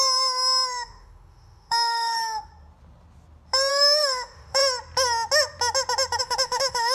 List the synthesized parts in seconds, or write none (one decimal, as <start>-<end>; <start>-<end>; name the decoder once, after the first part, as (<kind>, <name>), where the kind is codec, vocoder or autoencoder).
0.0-2.5 (autoencoder, DAC-VAE); 3.7-4.6; 6.2-6.9